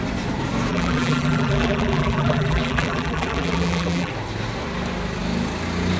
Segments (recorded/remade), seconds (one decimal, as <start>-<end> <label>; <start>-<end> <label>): 0.0-0.7 recorded; 0.7-4.1 remade; 4.1-6.0 recorded

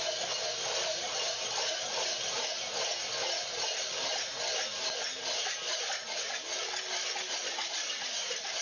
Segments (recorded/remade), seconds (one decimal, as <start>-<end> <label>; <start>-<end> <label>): 0.0-0.9 recorded; 0.9-1.9 remade; 1.9-7.6 recorded; 7.6-8.6 remade

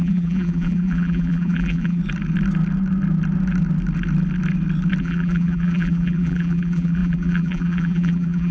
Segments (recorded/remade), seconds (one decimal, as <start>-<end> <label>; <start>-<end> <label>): 0.0-2.0 remade; 2.0-5.0 recorded; 5.0-8.5 remade

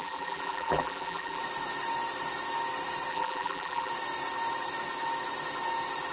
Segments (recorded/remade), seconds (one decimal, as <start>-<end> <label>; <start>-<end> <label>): 0.0-1.4 remade; 1.4-3.1 recorded; 3.1-3.9 remade; 3.9-6.1 recorded

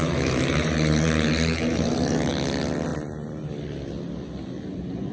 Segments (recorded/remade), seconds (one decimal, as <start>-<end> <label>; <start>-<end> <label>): 0.0-2.3 remade; 2.3-2.9 recorded; 2.9-3.5 remade; 3.5-5.1 recorded

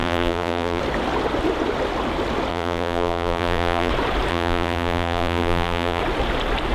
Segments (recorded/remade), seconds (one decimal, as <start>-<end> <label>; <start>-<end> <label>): 0.0-0.8 remade; 0.8-2.5 recorded; 2.5-3.9 remade; 3.9-4.3 recorded; 4.3-6.0 remade; 6.0-6.7 recorded